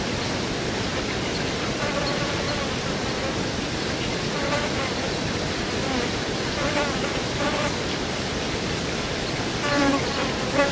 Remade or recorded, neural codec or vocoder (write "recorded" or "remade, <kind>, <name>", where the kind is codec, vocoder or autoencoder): recorded